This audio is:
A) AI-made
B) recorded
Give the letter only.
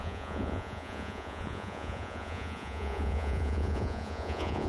A